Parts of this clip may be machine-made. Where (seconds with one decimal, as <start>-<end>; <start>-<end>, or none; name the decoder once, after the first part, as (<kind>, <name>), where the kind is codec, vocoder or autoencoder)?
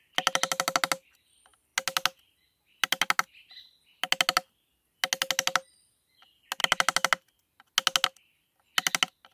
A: none